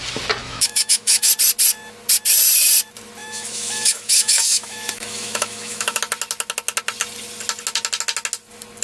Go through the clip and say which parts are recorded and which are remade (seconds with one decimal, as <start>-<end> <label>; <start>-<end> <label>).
0.0-0.4 recorded; 0.4-1.3 remade; 1.3-3.2 recorded; 3.2-6.0 remade; 6.0-8.8 recorded